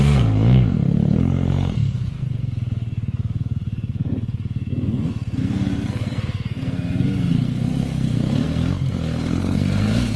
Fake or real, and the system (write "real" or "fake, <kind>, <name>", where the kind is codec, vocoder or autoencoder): fake, codec, SNAC